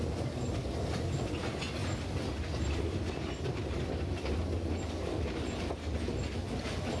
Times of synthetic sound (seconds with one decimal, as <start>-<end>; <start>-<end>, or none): none